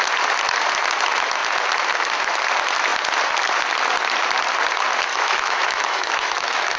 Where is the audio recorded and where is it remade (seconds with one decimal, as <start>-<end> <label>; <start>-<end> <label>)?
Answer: 0.0-5.1 recorded; 5.1-6.8 remade